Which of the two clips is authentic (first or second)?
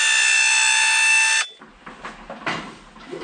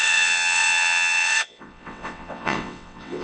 first